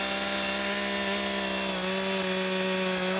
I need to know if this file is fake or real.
real